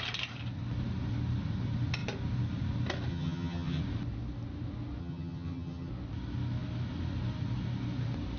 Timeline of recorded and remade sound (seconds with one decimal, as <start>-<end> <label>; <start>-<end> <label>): 0.0-3.1 recorded; 3.1-3.8 remade; 3.8-5.0 recorded; 5.0-5.9 remade; 5.9-8.4 recorded